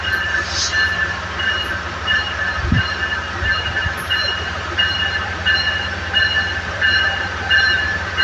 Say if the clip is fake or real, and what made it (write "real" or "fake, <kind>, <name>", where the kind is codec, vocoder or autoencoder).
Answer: fake, vocoder, BigVGAN v2